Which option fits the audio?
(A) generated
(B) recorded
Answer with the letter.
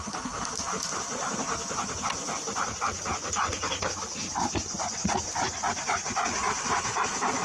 B